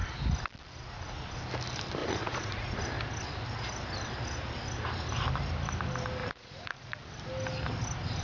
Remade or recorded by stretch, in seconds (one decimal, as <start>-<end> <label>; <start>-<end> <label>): 0.0-2.0 recorded; 2.0-2.8 remade; 2.8-6.2 recorded; 6.2-6.9 remade; 6.9-8.2 recorded